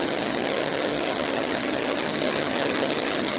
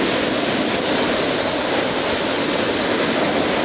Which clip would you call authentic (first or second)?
second